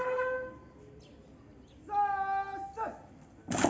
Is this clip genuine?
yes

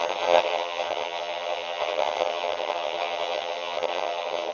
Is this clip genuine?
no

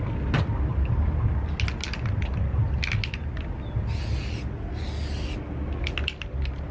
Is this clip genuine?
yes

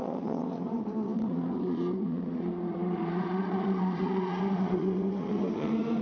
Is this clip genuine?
no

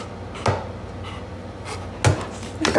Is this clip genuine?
yes